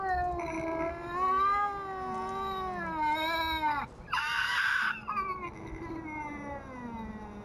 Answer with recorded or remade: recorded